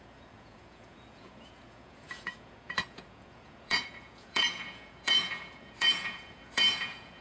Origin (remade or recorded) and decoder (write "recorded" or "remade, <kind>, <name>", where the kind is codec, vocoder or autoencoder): remade, vocoder, Vocos